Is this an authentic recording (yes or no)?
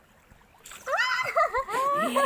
yes